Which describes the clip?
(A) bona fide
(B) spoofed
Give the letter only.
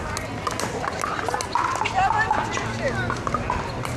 A